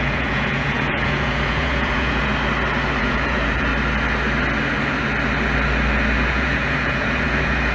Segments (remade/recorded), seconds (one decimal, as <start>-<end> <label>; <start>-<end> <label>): 0.0-2.3 remade; 2.3-3.0 recorded; 3.0-3.7 remade; 3.7-6.3 recorded; 6.3-7.7 remade